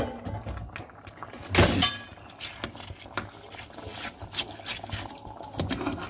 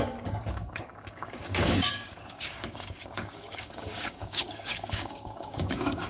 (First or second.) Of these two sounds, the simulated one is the second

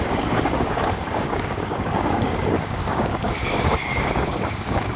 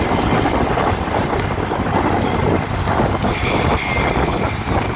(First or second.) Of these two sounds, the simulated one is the first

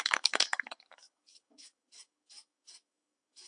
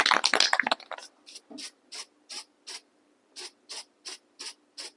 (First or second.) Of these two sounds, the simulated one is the first